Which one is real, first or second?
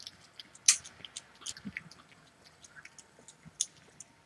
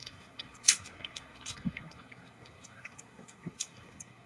first